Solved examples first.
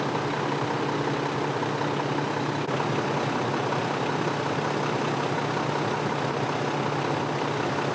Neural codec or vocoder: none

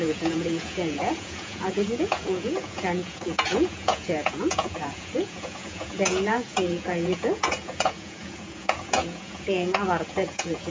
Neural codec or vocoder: vocoder, Vocos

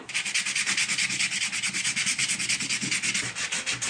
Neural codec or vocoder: none